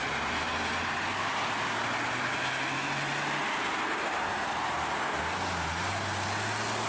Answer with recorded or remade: recorded